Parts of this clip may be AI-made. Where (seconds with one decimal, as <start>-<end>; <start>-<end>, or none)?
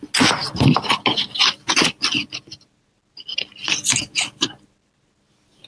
none